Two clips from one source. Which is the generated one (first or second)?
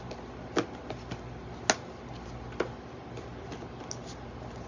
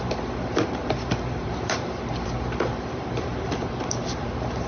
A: second